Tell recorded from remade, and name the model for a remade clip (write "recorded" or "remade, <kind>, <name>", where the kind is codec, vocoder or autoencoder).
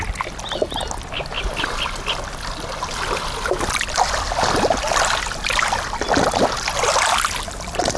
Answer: recorded